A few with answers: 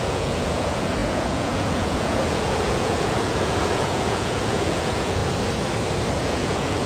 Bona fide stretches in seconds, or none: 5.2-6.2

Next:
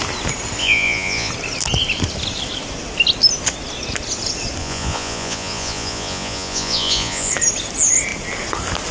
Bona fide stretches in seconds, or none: 0.0-0.6; 1.3-4.6; 7.3-8.9

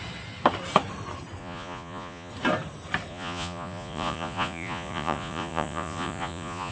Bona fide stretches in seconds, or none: 0.0-1.4; 2.3-3.1

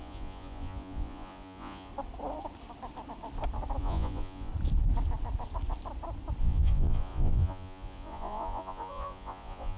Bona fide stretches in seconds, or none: 1.9-3.8; 4.5-6.4

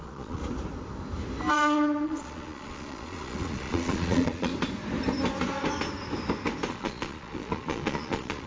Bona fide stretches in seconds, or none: 0.4-1.5; 4.5-6.7